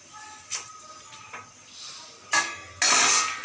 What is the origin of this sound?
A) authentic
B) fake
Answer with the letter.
A